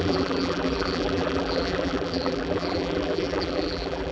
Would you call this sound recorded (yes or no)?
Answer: no